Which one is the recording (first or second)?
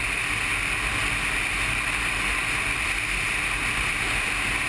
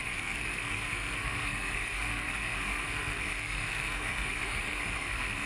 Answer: first